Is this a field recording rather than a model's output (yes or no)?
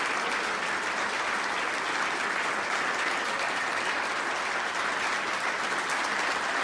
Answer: yes